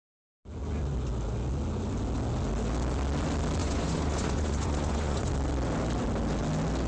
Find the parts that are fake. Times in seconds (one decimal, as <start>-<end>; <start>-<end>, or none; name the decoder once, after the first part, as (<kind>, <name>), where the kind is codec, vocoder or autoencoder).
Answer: 3.6-5.3 (vocoder, Vocos)

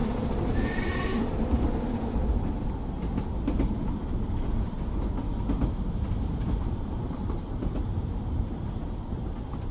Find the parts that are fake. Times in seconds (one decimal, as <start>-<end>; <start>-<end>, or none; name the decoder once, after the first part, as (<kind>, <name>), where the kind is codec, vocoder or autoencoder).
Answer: 0.0-4.7 (vocoder, BigVGAN v2); 7.9-9.7